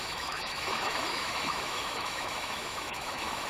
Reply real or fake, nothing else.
fake